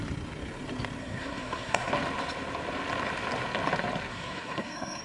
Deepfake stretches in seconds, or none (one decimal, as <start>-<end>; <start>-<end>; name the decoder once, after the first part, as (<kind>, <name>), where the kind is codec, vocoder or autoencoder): 1.0-1.9 (codec, SNAC); 4.1-5.0